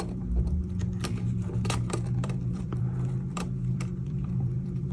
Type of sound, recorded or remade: remade